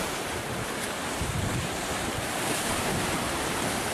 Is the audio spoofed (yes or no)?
yes